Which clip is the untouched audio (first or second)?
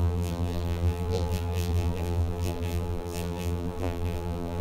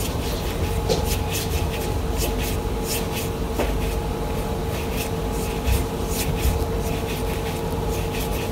second